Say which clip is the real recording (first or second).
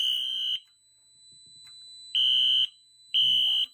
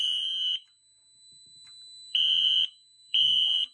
first